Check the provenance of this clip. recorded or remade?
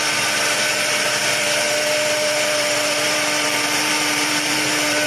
remade